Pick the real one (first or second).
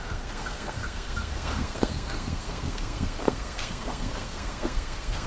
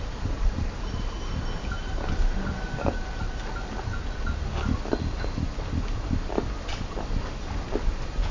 second